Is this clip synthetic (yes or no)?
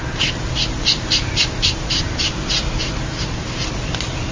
no